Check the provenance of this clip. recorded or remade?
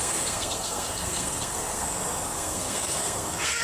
remade